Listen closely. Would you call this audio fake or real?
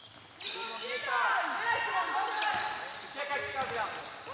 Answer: real